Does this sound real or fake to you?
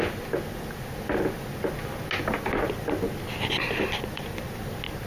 real